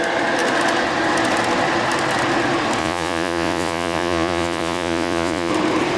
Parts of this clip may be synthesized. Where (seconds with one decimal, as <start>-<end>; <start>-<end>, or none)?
2.8-5.5